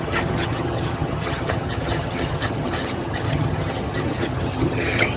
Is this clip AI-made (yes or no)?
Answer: yes